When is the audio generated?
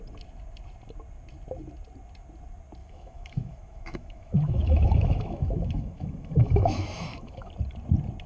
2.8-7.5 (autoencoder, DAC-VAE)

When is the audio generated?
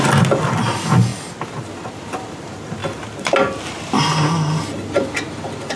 none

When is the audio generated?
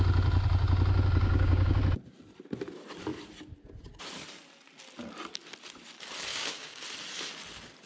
1.2-1.8 (codec, DAC); 6.3-6.8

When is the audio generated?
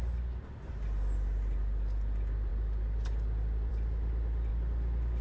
none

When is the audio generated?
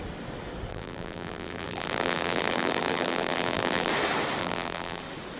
0.7-3.9 (vocoder, BigVGAN v2); 4.4-5.0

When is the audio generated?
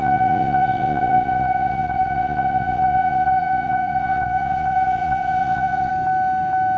0.0-5.9 (vocoder, Vocos)